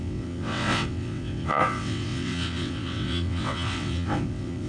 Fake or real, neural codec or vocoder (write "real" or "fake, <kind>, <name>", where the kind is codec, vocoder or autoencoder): fake, vocoder, WaveNeXt